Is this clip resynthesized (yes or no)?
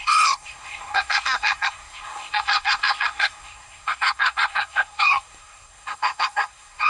yes